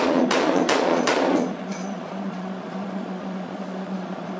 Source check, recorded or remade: remade